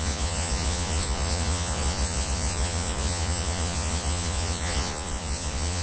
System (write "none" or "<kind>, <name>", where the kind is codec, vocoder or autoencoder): vocoder, Vocos